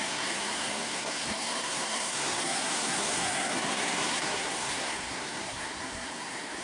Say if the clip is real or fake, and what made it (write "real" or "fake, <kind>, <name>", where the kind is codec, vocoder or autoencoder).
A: fake, codec, SNAC